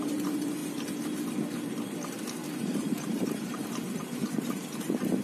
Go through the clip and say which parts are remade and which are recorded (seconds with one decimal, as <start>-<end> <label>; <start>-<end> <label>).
0.0-0.6 recorded; 0.6-3.7 remade; 3.7-5.2 recorded